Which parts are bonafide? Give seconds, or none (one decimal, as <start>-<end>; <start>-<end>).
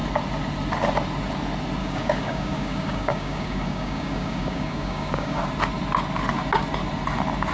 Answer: 0.0-1.8; 5.4-7.5